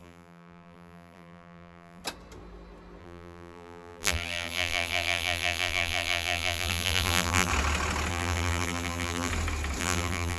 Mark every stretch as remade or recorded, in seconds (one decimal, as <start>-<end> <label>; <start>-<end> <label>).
0.0-2.0 remade; 2.0-3.0 recorded; 3.0-7.5 remade; 7.5-8.1 recorded; 8.1-9.3 remade; 9.3-9.8 recorded; 9.8-10.4 remade